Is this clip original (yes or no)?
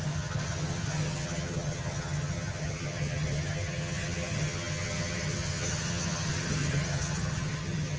no